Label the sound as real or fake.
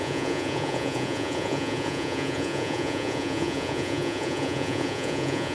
fake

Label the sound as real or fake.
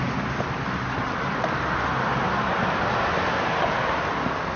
real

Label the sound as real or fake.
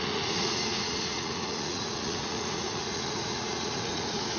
fake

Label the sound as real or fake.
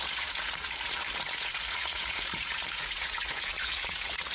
fake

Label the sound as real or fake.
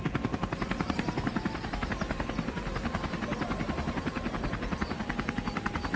real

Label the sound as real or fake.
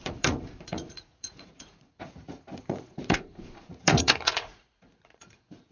fake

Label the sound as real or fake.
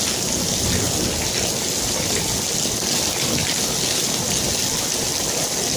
real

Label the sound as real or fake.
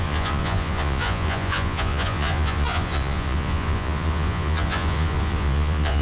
fake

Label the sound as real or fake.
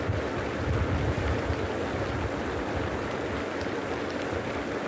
real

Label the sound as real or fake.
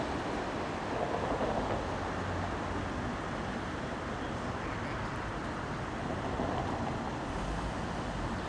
real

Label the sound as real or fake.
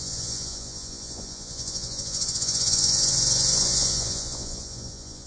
fake